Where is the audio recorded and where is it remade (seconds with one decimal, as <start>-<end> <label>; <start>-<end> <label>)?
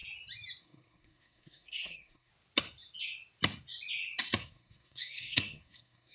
0.0-0.6 recorded; 0.6-2.3 remade; 2.3-4.4 recorded; 4.4-6.1 remade